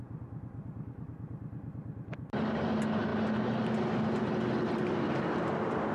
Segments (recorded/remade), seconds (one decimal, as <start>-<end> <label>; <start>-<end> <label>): 0.0-5.9 recorded